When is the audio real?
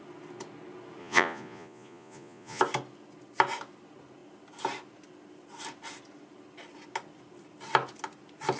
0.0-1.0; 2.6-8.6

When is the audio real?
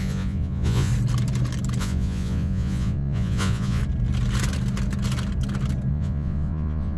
0.9-1.8; 3.8-5.9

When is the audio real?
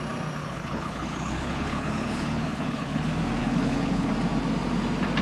0.0-0.4; 3.0-3.4; 4.1-5.2